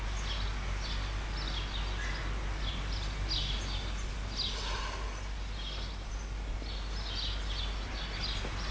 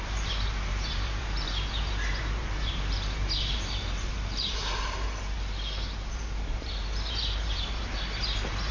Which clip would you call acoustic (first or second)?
first